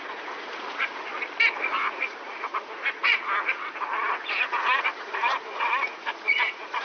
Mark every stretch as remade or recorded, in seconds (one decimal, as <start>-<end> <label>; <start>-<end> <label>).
0.0-1.1 remade; 1.1-1.6 recorded; 1.6-6.8 remade